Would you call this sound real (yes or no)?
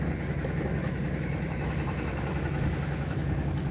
no